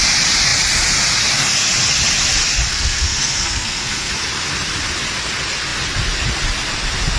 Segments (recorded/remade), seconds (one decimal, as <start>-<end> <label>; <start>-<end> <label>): 0.0-2.7 recorded; 2.7-4.1 remade; 4.1-7.2 recorded